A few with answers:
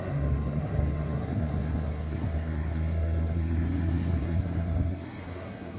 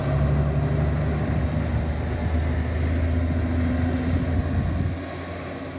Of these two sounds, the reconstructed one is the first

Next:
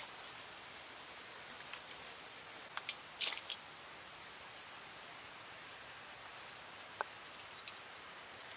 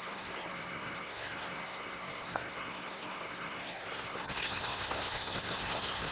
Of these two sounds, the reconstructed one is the second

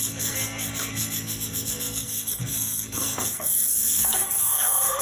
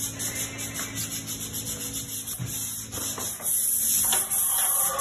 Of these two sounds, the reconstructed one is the first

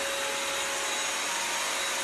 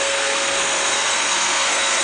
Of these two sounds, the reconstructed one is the second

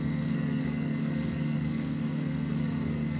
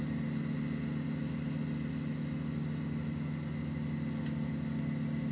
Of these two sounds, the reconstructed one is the first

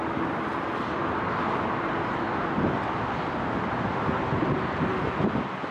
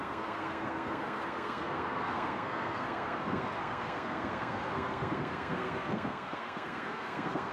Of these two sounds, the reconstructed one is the second